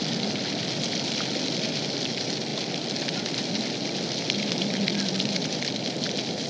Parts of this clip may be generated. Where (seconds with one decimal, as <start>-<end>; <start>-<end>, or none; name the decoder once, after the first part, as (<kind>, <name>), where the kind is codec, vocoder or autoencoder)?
none